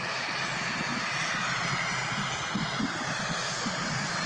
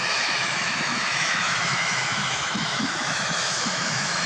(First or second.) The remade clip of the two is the second